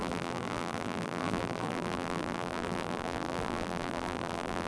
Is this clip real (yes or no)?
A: no